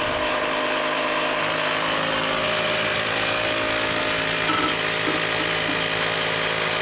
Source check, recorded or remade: recorded